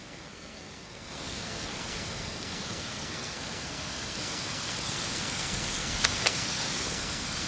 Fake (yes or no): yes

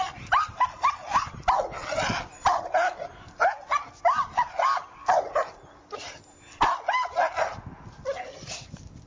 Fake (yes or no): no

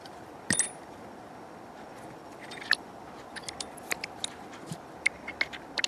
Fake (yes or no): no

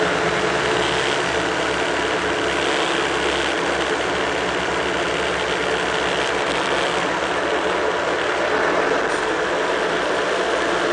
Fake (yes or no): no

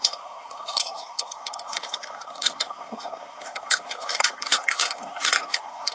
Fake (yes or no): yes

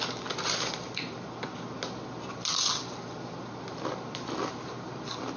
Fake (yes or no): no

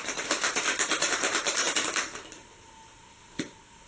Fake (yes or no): yes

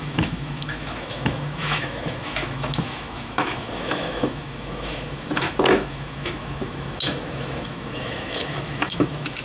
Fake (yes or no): yes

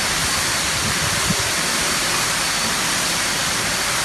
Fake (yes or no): no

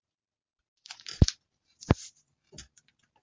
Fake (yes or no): yes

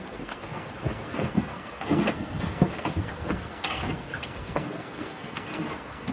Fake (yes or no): yes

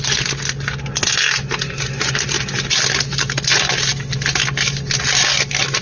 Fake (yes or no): no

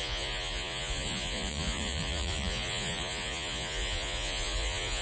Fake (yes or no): yes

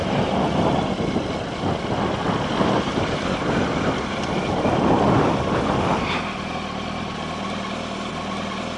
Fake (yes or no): no